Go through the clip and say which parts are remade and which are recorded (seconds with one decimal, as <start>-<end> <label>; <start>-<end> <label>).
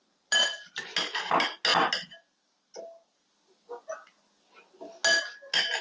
0.0-5.8 recorded